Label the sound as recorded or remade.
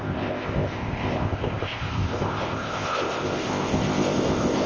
remade